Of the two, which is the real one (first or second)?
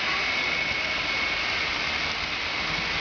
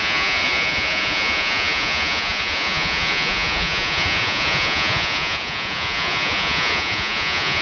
first